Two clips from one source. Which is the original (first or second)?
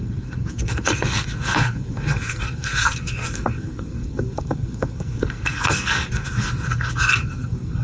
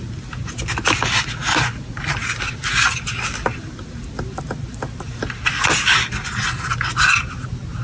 second